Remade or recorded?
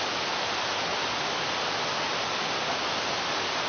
recorded